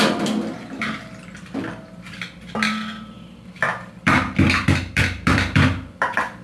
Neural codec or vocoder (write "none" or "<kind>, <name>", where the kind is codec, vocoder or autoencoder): vocoder, BigVGAN v2